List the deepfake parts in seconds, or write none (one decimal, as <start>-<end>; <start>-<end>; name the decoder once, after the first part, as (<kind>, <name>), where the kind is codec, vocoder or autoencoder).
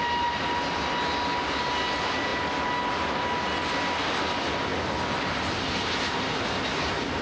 none